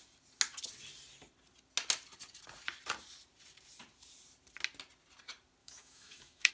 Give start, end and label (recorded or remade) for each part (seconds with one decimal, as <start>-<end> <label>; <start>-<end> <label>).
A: 0.0-5.6 recorded; 5.6-6.5 remade